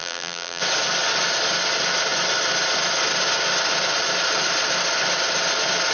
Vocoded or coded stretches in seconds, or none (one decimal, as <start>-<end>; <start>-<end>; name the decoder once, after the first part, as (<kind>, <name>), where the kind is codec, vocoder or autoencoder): 0.0-0.6 (vocoder, BigVGAN v2)